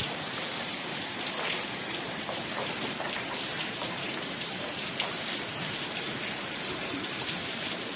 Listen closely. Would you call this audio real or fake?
fake